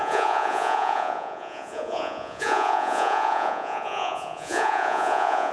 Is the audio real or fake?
fake